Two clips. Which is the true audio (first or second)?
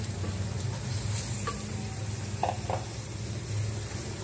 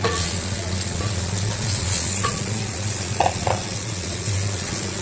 first